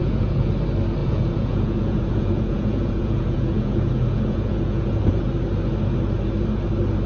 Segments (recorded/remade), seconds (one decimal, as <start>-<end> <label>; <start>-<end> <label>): 0.0-0.5 remade; 0.5-1.0 recorded; 1.0-5.3 remade; 5.3-7.1 recorded